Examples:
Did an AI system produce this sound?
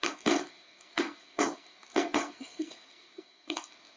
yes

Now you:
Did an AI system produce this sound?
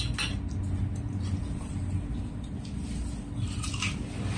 no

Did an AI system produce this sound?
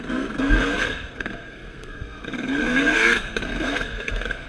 yes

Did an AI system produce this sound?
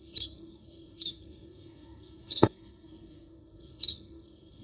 yes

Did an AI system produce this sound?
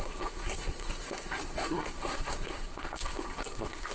yes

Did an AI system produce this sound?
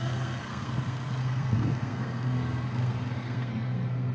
yes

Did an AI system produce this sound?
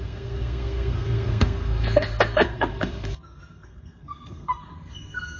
yes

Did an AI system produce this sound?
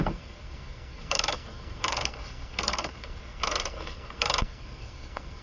yes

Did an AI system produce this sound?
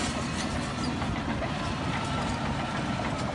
no